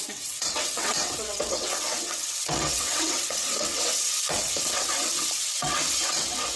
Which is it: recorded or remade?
remade